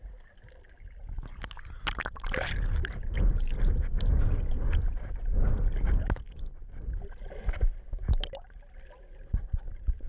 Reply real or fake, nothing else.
real